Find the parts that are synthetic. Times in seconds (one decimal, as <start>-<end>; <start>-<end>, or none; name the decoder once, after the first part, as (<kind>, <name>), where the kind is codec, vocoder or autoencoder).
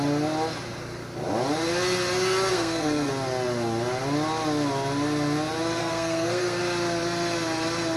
2.5-3.1 (codec, SNAC); 5.8-6.6